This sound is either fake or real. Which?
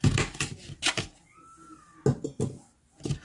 real